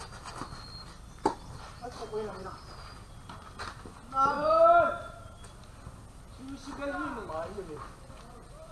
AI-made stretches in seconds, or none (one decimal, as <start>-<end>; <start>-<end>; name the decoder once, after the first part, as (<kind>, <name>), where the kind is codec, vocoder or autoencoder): none